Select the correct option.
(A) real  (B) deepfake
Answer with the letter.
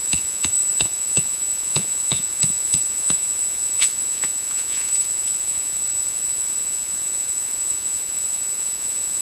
B